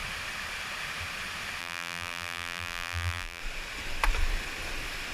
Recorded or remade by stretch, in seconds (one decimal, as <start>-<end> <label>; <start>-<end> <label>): 0.0-1.6 recorded; 1.6-3.4 remade; 3.4-5.1 recorded